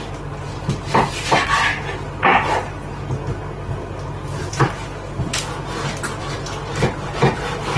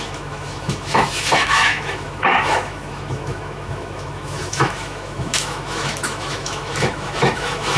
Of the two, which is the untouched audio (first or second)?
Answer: first